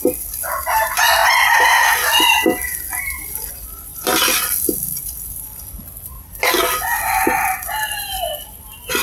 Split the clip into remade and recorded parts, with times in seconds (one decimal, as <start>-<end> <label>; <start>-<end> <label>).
0.0-3.9 recorded; 3.9-5.0 remade; 5.0-9.0 recorded